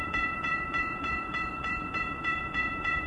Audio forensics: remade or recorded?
remade